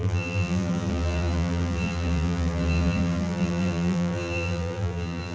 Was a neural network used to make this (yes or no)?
yes